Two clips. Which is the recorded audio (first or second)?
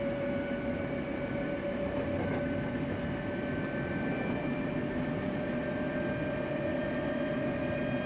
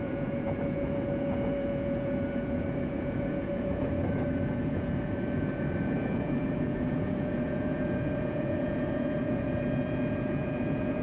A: first